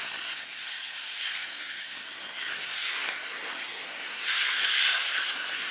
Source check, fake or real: fake